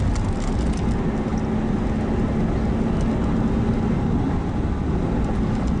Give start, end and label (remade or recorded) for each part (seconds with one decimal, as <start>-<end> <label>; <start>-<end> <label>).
0.0-5.8 recorded